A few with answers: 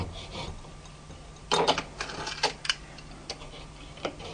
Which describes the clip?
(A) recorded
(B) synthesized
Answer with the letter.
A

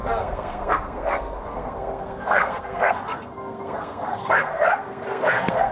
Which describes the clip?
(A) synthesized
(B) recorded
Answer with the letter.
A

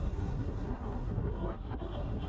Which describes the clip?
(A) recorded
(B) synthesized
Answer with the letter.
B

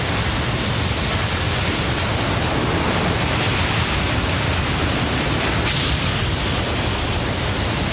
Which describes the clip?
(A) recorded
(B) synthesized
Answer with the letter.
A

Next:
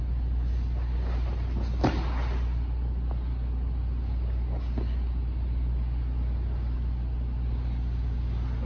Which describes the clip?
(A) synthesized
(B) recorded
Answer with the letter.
B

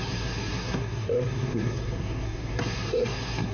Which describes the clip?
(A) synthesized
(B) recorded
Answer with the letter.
A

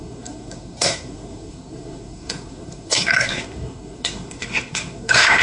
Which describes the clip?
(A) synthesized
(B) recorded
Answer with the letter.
A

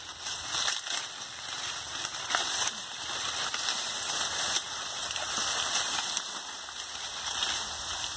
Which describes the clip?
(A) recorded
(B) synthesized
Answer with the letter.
A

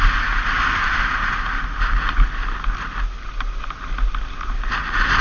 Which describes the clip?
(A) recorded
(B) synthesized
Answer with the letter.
A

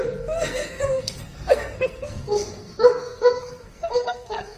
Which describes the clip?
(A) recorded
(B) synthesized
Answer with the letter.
B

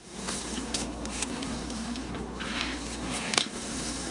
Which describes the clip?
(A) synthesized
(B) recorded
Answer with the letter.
A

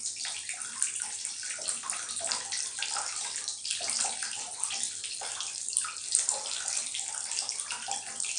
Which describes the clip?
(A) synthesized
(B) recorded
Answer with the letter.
B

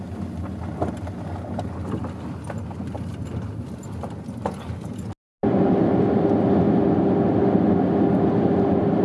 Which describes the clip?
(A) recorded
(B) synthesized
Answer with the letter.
A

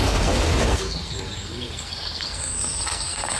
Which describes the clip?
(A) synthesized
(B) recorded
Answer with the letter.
A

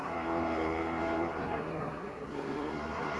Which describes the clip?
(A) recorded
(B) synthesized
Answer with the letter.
B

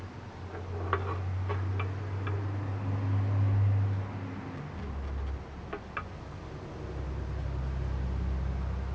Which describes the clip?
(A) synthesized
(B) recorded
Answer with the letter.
B